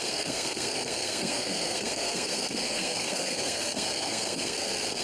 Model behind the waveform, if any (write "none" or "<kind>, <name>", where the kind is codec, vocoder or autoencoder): codec, SNAC